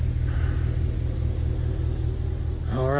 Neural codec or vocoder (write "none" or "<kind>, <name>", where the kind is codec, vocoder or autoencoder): none